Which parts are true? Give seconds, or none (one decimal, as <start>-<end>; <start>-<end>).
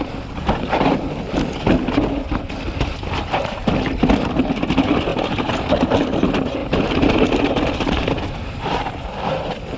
0.0-5.1; 5.6-6.6; 8.1-9.8